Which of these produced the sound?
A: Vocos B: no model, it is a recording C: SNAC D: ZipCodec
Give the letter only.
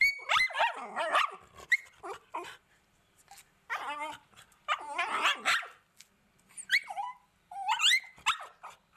B